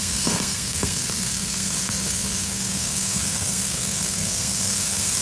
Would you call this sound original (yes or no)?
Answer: no